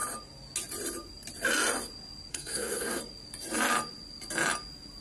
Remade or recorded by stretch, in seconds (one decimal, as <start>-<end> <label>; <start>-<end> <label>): 0.0-2.3 recorded; 2.3-3.0 remade; 3.0-5.0 recorded